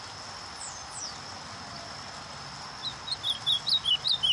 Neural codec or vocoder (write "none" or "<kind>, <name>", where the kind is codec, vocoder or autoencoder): none